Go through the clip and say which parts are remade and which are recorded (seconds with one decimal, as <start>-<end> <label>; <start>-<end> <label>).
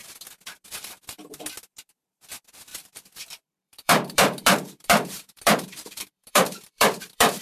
0.0-2.7 recorded; 2.7-7.4 remade